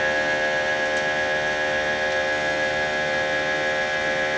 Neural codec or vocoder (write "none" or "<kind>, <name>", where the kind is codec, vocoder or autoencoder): none